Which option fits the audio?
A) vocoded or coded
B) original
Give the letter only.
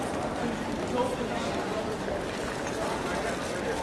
B